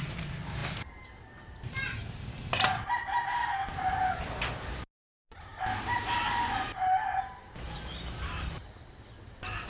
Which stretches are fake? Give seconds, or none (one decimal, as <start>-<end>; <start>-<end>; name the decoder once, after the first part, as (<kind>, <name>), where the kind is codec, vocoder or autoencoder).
none